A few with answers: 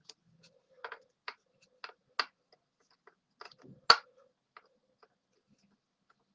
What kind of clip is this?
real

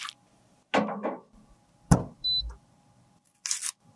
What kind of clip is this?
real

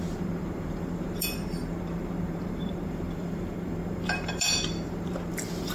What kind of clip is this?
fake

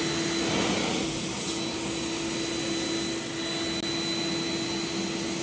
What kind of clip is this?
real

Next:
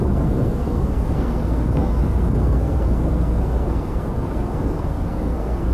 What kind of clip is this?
fake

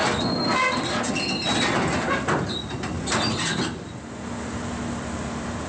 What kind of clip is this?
real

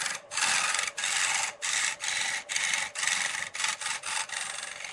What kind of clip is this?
real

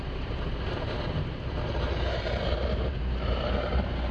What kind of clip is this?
fake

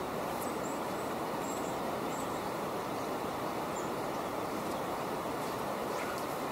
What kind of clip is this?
fake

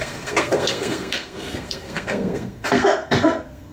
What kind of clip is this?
fake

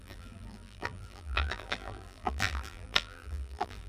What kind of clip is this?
fake